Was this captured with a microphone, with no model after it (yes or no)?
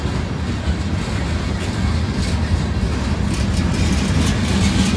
yes